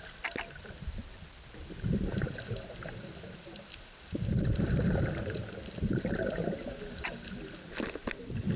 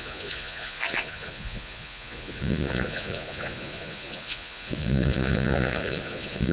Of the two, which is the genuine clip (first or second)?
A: first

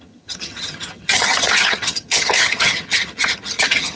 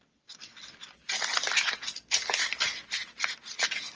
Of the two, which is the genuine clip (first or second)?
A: second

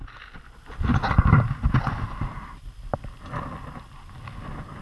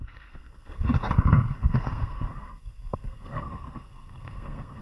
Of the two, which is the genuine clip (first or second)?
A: first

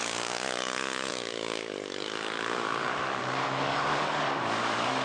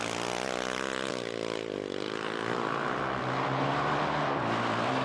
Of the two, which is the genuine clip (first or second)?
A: second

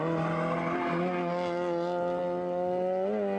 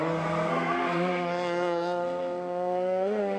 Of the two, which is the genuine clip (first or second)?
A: first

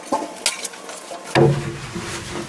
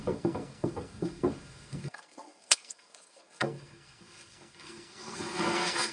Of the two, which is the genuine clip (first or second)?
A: first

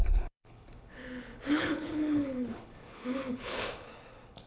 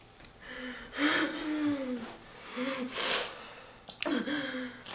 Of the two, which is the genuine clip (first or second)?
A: second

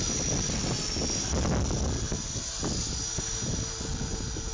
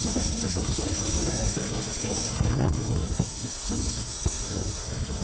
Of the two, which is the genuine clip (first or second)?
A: first